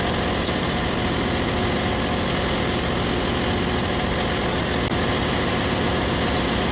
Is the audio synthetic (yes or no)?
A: no